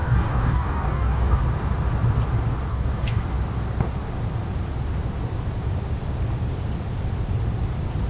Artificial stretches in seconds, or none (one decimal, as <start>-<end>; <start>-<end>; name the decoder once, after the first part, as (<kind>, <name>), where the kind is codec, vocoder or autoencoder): 0.0-1.4 (codec, DAC); 2.7-3.2

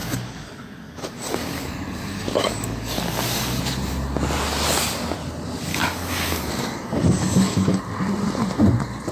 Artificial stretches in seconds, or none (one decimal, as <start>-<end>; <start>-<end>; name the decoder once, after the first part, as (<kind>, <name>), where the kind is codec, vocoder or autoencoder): 0.0-3.6 (codec, DAC); 5.7-7.8

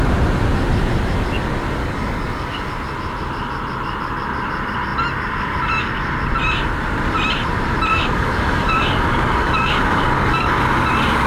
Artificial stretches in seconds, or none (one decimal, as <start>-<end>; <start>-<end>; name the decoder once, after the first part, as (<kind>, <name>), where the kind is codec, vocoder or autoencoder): 1.8-2.7 (codec, DAC); 7.9-10.6

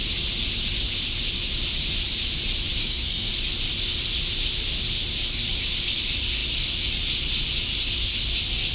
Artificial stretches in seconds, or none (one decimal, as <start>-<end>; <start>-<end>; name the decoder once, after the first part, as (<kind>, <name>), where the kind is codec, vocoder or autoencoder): 2.8-3.3 (codec, DAC)

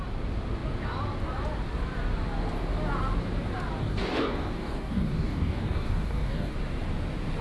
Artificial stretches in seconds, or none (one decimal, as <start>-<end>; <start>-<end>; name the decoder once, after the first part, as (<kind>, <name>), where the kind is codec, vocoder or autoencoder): 3.8-6.6 (codec, DAC)

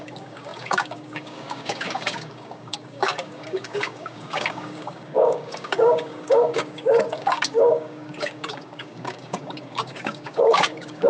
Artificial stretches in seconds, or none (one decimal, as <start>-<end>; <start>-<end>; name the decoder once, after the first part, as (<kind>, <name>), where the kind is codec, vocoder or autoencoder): 0.0-11.1 (codec, DAC)

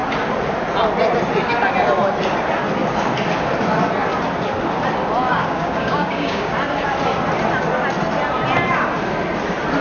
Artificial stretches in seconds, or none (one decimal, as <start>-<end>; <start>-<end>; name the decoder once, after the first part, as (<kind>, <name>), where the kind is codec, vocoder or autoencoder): 5.3-6.5 (codec, DAC)